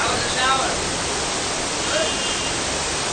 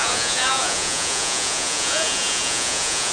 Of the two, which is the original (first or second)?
first